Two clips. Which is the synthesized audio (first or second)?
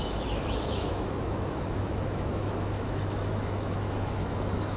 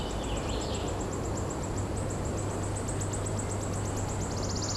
first